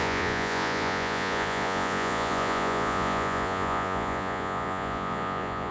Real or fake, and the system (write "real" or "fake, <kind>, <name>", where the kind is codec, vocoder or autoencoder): fake, vocoder, Vocos